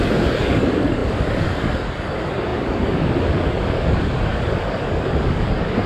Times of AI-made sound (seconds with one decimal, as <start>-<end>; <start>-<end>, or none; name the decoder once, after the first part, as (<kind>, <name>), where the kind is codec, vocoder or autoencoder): 0.0-5.9 (codec, DAC)